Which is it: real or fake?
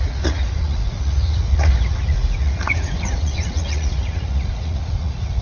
fake